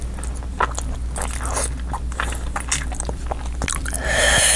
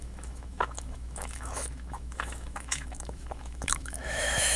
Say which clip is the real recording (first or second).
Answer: first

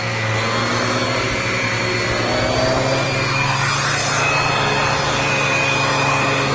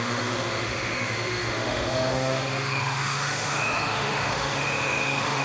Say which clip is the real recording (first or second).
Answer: first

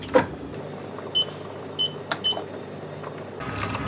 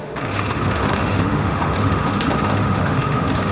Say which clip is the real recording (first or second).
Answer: first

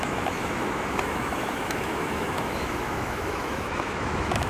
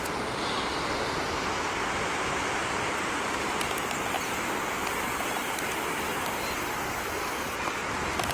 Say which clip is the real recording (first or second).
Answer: second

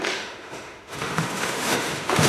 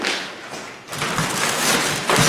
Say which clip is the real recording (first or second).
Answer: second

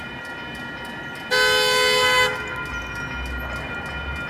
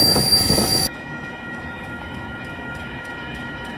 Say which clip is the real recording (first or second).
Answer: first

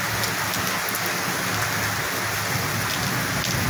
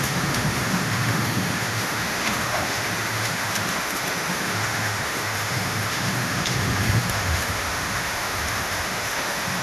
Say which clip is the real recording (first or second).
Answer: first